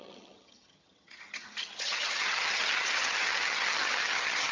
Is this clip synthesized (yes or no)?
yes